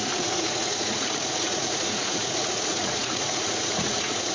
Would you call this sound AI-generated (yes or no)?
yes